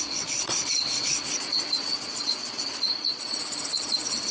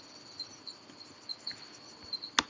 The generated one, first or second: first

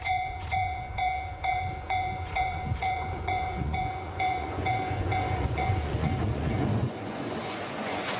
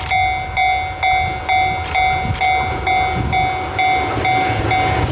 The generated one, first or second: first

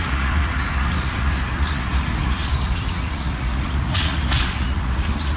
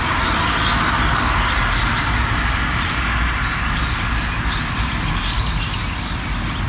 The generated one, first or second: first